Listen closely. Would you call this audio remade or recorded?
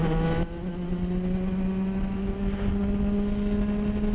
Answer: recorded